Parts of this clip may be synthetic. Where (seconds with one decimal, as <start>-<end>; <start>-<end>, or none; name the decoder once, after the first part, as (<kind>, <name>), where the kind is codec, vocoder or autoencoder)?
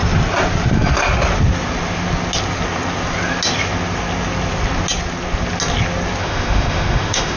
6.2-7.4 (autoencoder, DAC-VAE)